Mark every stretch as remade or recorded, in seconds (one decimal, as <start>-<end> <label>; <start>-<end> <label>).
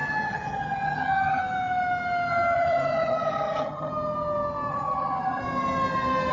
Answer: 0.0-1.4 remade; 1.4-2.3 recorded; 2.3-3.9 remade; 3.9-4.7 recorded; 4.7-5.4 remade; 5.4-6.3 recorded